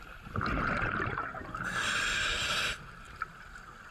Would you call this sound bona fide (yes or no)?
yes